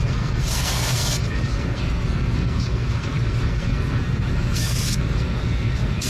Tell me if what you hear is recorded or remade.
remade